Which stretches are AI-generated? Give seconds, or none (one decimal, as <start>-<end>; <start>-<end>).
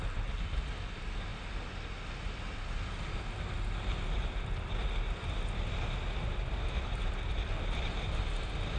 none